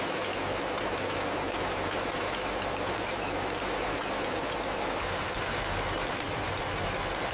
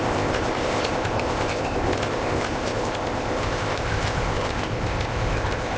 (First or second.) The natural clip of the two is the first